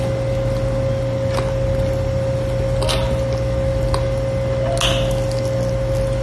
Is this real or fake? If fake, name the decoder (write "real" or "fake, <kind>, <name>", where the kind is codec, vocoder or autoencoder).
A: real